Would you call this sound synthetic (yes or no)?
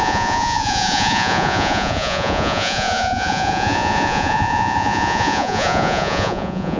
yes